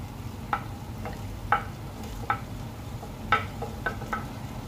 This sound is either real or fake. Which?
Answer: real